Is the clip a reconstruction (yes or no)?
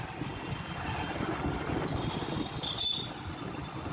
no